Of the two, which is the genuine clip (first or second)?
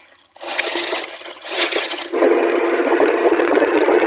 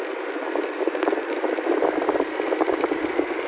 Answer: second